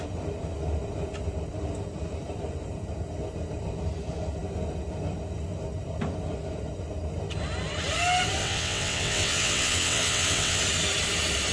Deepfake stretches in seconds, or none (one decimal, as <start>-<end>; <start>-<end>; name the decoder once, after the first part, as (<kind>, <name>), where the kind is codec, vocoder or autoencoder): 8.4-10.6 (vocoder, WaveNeXt)